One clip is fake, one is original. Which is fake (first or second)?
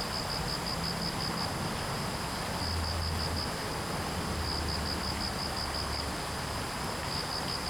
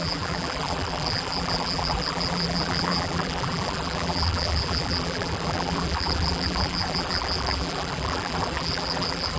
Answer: second